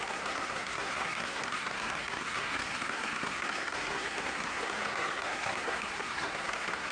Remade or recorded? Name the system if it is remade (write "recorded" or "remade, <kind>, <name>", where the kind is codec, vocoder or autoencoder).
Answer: remade, codec, SNAC